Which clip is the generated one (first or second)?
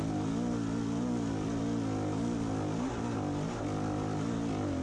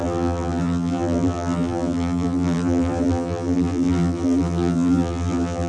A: second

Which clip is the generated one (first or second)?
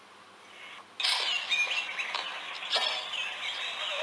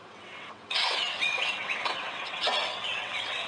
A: second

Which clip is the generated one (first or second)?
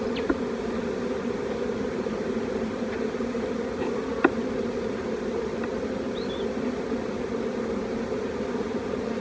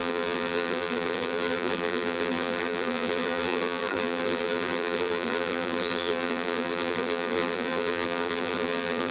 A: second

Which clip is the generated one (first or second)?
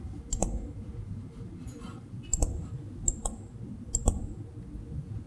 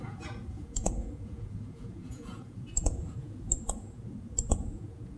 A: second